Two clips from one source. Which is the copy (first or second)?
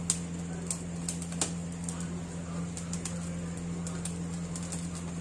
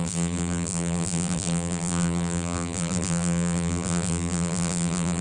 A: second